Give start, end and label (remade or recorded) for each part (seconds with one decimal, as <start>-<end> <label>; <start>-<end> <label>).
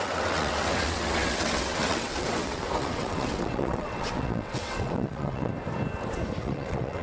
0.0-5.5 remade; 5.5-6.4 recorded; 6.4-7.0 remade